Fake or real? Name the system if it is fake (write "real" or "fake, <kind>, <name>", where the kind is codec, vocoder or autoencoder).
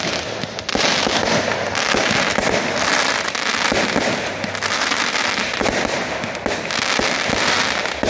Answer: real